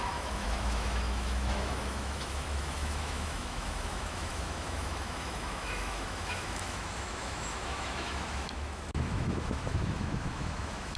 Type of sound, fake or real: fake